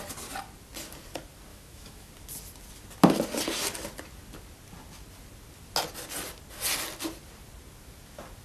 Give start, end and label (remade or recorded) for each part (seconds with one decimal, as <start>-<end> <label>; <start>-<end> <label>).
0.0-1.5 recorded; 1.5-2.1 remade; 2.1-8.4 recorded